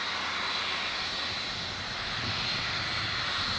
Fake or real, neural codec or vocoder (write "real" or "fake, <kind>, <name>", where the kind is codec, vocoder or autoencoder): real